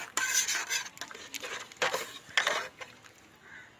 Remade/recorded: recorded